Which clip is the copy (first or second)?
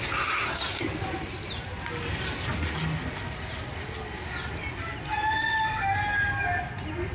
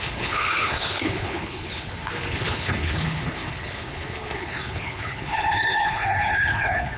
second